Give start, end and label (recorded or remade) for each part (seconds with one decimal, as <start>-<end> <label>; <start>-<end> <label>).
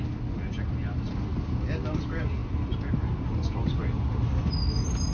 0.0-5.1 recorded